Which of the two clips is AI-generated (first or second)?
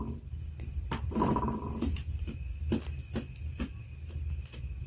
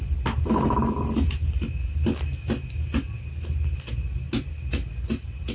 first